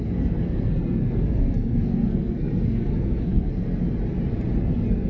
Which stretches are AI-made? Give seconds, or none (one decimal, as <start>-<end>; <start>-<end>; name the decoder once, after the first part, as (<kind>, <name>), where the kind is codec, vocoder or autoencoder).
0.0-3.8 (codec, SNAC); 4.6-5.1